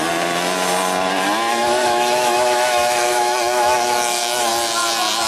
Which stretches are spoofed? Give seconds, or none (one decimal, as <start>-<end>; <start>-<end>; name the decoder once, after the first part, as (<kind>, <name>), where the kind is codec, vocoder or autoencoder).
1.5-4.5 (autoencoder, DAC-VAE)